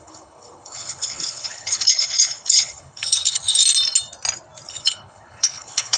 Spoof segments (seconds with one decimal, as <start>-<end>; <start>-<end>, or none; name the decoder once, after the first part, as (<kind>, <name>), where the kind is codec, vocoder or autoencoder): 0.0-3.6 (codec, HILCodec); 4.7-6.0